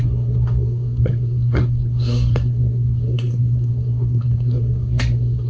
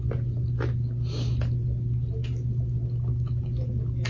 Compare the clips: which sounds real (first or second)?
second